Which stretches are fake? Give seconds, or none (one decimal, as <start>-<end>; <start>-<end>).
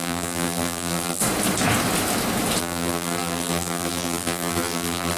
0.0-1.2; 2.6-5.2